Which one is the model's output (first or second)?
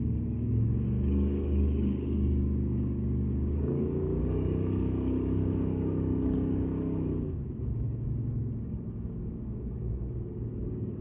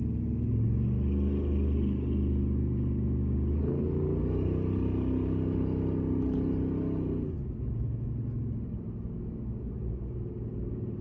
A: first